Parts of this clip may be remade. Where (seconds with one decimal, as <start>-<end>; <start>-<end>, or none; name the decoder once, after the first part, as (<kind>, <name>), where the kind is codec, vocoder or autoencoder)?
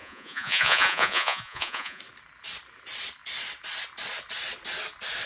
0.0-2.0 (vocoder, Vocos)